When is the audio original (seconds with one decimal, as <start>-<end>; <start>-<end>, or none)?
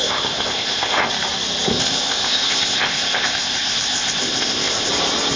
1.1-1.7; 4.9-5.4